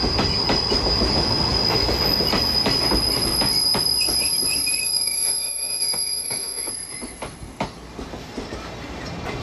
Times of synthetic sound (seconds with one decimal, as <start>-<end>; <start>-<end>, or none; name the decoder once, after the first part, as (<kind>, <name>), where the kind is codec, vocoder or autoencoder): 4.8-6.7 (autoencoder, DAC-VAE)